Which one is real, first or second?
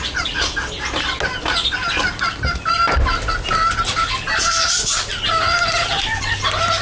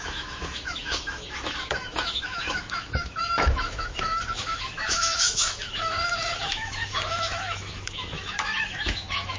first